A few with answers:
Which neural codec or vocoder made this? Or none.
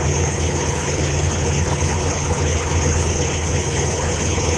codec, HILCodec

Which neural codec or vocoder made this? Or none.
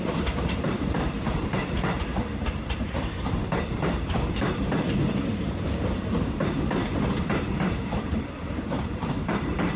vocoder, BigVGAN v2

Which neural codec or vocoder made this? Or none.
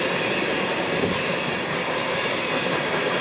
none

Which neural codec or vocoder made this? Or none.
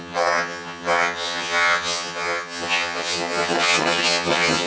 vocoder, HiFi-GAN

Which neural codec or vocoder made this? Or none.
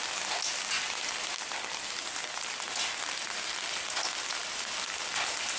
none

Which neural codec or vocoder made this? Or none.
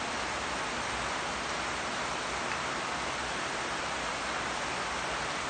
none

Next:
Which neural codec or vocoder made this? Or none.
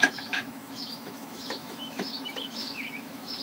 autoencoder, DAC-VAE